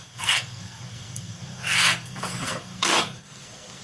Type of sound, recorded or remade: remade